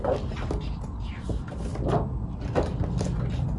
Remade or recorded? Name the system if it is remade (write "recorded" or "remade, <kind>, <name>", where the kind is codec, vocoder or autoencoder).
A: recorded